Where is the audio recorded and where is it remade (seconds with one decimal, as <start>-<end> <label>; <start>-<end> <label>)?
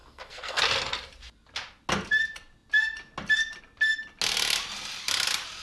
0.0-0.6 remade; 0.6-5.6 recorded